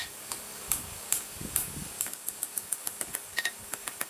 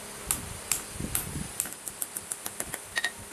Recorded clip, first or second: second